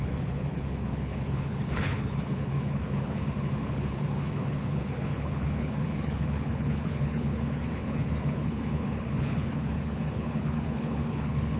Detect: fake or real fake